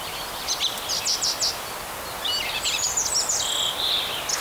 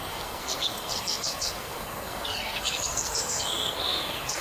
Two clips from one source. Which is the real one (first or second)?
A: first